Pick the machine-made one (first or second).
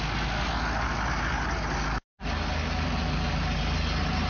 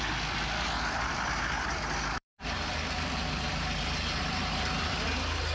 second